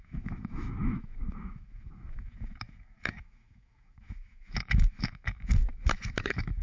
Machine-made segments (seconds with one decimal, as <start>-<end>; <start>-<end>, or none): 0.0-6.6